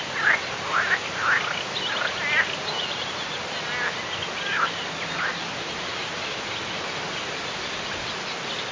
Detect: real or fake real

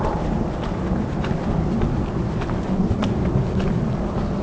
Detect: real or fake real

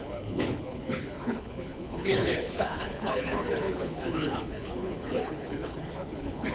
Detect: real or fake fake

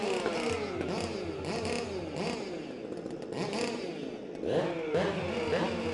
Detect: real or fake real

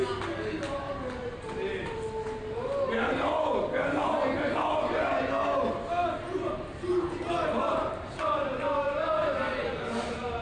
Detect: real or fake real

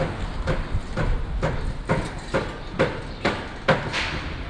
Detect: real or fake real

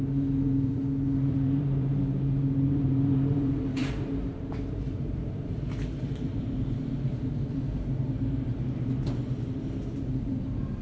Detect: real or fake fake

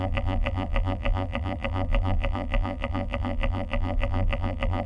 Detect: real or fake fake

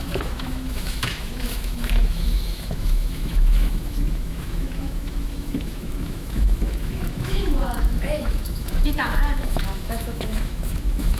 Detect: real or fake fake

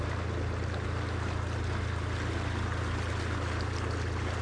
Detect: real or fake real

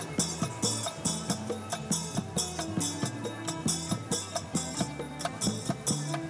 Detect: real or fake real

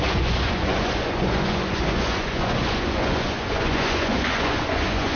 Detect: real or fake fake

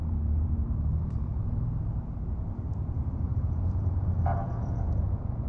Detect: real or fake fake